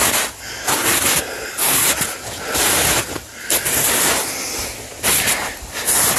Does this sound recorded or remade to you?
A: recorded